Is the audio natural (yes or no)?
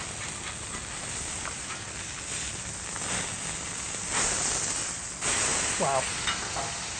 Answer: yes